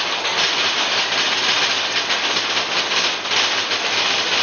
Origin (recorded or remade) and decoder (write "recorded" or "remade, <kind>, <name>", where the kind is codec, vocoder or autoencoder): recorded